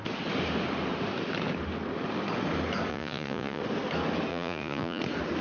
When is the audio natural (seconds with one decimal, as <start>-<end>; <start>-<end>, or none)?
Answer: 0.0-2.9; 3.6-4.3; 5.0-5.4